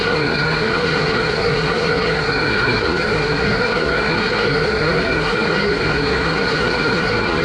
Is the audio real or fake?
fake